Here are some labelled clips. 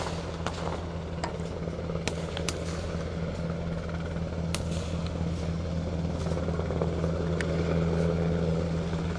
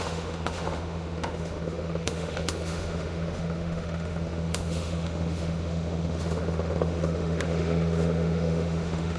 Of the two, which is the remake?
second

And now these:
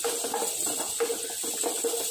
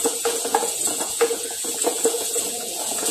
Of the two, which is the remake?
second